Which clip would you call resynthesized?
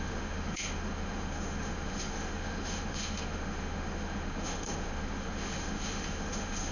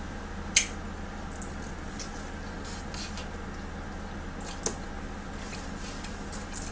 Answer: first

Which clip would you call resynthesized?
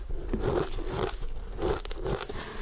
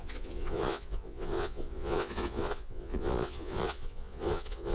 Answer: second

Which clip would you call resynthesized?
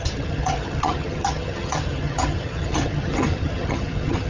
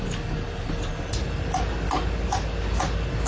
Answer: first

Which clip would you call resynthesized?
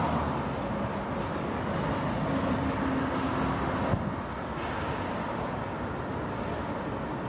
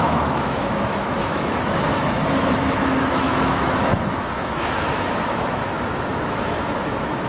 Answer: second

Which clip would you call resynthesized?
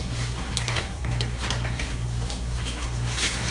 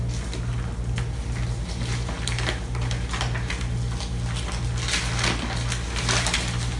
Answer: first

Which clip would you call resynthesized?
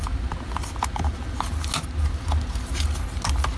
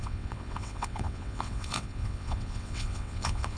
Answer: second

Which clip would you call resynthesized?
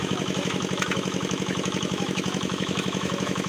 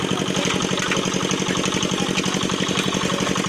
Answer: first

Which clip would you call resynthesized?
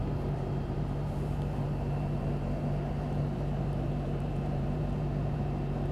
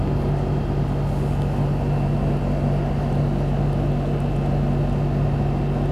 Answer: first